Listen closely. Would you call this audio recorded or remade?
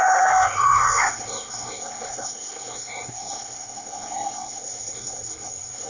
remade